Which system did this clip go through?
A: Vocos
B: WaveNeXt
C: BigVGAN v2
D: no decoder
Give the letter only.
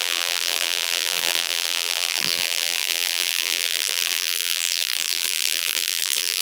C